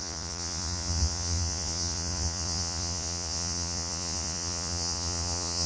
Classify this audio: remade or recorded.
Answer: remade